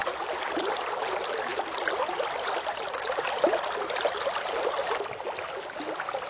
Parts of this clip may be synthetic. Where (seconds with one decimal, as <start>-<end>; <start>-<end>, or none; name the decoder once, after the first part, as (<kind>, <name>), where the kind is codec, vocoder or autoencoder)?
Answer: none